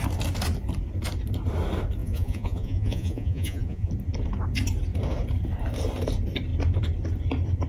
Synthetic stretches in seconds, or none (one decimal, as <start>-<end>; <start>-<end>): 2.0-3.9